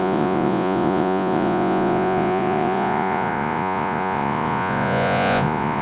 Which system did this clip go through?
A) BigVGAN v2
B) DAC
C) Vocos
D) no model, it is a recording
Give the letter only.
C